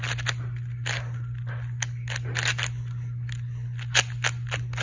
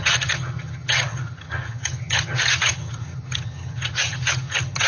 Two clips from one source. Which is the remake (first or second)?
second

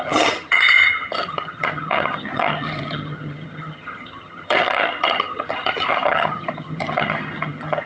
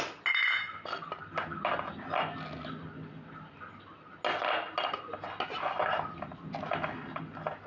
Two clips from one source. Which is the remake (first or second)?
first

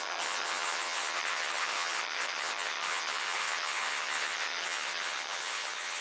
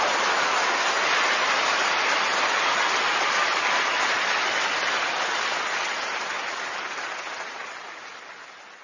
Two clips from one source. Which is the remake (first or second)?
first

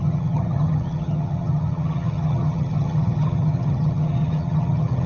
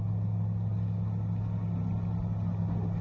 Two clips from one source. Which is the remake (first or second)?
first